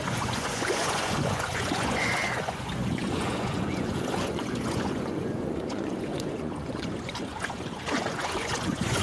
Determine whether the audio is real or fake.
fake